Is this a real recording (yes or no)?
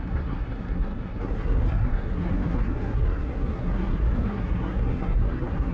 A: no